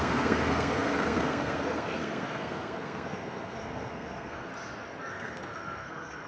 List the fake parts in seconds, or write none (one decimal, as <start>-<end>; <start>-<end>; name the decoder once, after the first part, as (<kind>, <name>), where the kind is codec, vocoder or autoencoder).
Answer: 0.0-4.5 (codec, SNAC); 5.1-6.3